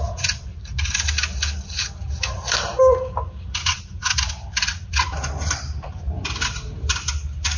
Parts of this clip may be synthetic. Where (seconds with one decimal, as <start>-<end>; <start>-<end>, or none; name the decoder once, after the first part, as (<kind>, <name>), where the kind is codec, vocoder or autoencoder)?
none